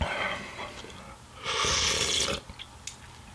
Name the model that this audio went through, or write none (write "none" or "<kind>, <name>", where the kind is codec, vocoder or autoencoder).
none